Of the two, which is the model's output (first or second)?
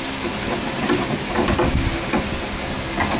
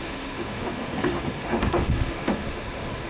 second